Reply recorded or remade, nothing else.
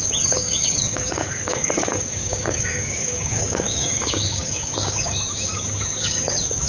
remade